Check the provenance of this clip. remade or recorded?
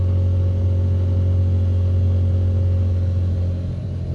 recorded